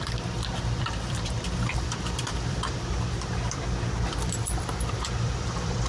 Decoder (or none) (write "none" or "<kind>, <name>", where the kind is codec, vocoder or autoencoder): vocoder, BigVGAN v2